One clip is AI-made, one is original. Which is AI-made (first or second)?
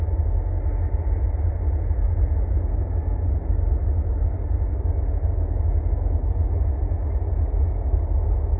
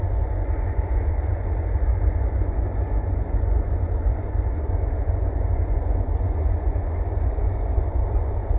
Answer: second